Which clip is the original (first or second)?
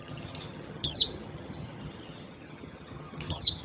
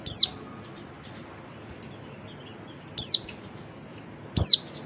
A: second